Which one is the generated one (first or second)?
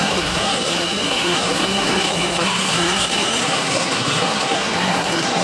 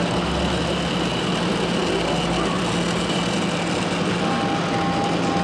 first